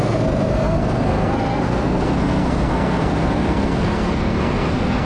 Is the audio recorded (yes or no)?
no